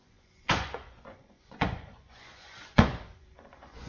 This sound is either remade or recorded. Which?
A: remade